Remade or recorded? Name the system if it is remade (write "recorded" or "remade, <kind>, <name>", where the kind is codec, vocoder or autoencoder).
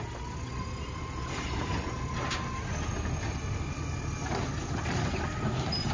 recorded